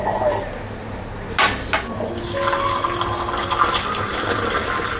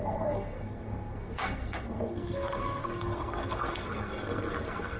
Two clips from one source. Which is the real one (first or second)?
first